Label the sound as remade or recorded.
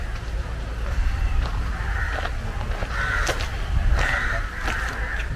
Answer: recorded